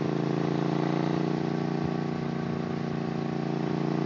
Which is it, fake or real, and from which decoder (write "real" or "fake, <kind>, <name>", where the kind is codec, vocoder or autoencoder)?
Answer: real